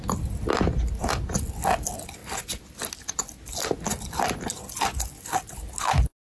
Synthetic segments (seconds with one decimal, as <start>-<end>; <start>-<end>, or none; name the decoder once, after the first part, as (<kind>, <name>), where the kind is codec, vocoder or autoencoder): none